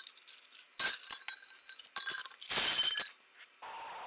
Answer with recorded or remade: recorded